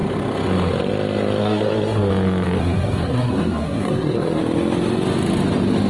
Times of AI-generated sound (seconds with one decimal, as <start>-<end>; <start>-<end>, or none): 1.4-2.1; 2.6-4.4